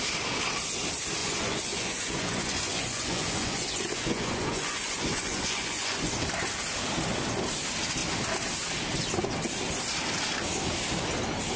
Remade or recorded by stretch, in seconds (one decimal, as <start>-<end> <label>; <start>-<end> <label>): 0.0-1.2 recorded; 1.2-6.1 remade; 6.1-11.6 recorded